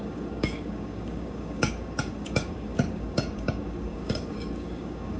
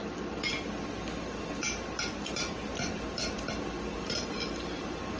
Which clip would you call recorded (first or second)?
second